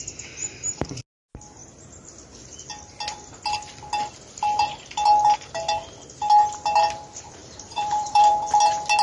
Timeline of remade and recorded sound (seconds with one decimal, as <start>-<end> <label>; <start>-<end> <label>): 0.0-0.4 recorded; 0.4-1.0 remade; 1.0-7.4 recorded; 7.4-8.3 remade; 8.3-9.0 recorded